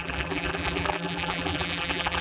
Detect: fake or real fake